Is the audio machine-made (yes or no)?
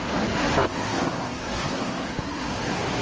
yes